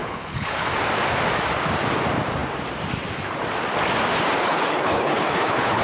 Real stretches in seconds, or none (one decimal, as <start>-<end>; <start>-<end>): 0.7-4.4